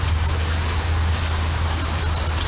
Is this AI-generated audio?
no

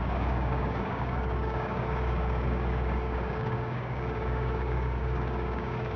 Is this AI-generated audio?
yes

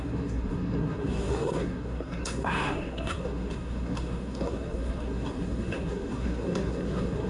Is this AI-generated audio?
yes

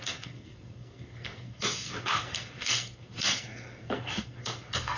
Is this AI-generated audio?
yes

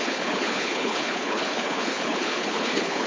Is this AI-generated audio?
yes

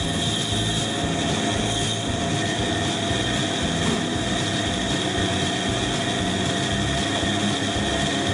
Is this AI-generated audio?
no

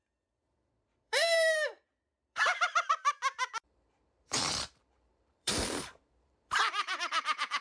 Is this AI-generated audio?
yes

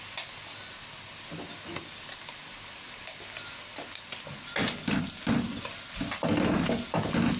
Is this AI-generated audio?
no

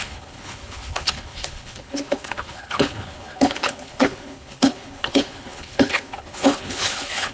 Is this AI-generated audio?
yes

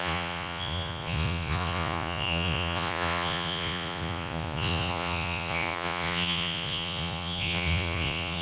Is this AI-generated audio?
yes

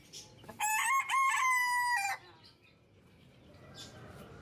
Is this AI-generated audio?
no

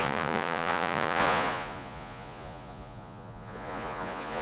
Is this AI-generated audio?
yes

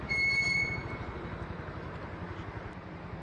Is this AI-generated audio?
no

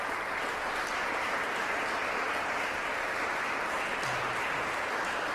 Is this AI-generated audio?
no